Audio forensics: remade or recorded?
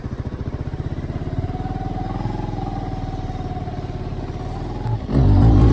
recorded